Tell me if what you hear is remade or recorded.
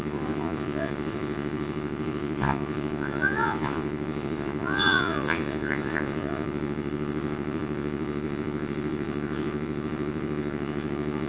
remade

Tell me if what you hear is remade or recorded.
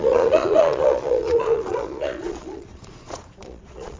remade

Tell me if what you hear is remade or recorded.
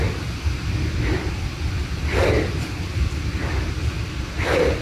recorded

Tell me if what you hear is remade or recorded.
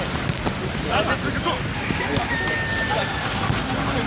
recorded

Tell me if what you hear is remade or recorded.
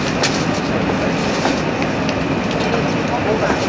recorded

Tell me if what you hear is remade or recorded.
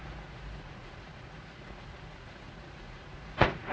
remade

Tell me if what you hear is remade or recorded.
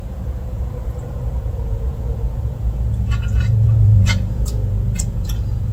remade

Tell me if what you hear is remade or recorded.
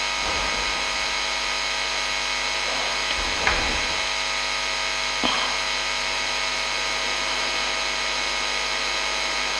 recorded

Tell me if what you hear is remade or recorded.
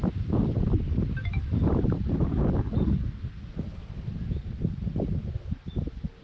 recorded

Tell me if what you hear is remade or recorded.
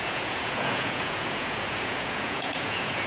remade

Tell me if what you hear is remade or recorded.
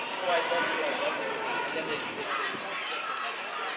recorded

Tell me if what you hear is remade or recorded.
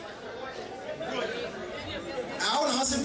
recorded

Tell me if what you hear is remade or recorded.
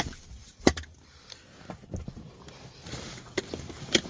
recorded